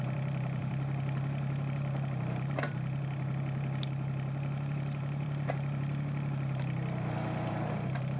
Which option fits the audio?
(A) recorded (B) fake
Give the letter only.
B